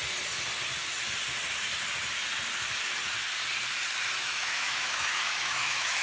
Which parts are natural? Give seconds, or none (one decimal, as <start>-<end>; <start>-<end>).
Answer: 0.0-4.2